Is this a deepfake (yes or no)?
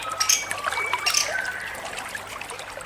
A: no